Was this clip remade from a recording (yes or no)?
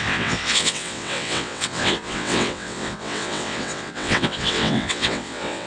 yes